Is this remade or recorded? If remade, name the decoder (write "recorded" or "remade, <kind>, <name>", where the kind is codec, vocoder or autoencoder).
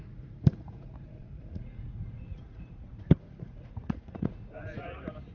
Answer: remade, vocoder, Vocos